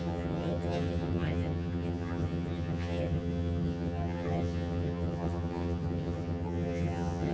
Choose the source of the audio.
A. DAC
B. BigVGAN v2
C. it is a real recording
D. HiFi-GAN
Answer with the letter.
D